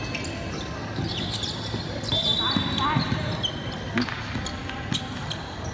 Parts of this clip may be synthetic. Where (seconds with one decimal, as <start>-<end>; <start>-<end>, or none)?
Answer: none